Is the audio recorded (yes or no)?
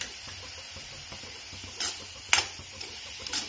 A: yes